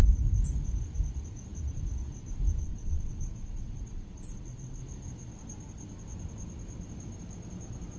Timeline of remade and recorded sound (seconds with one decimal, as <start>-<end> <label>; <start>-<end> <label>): 0.0-2.6 recorded; 2.6-4.8 remade; 4.8-8.0 recorded